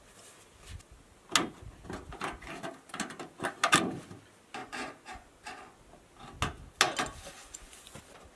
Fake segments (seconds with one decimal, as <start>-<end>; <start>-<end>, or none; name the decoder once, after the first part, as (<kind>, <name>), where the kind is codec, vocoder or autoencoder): 4.6-5.8 (vocoder, Vocos); 7.4-8.0